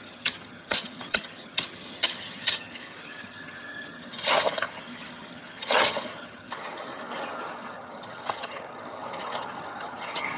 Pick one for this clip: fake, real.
fake